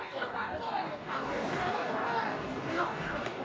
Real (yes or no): no